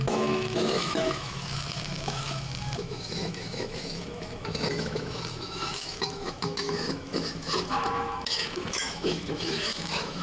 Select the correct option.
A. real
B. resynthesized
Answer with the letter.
B